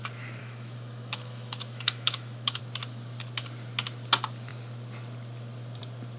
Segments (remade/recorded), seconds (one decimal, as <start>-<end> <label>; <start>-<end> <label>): 0.0-0.4 recorded; 0.4-2.6 remade; 2.6-6.2 recorded